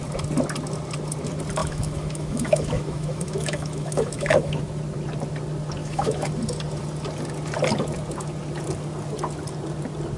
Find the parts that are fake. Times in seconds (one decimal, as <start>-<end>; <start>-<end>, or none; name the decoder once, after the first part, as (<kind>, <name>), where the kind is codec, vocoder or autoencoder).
1.6-4.6 (autoencoder, DAC-VAE); 5.8-6.3